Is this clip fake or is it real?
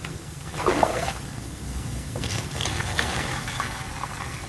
fake